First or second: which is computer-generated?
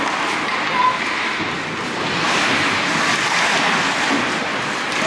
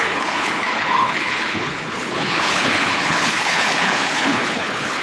second